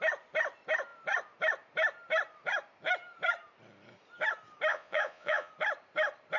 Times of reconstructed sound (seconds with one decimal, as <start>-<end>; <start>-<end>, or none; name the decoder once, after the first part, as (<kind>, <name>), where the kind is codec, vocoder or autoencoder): 4.7-5.5 (vocoder, Vocos)